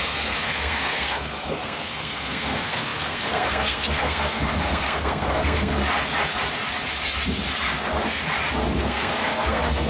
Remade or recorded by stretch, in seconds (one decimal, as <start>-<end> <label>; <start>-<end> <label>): 0.0-5.8 remade; 5.8-8.8 recorded; 8.8-9.9 remade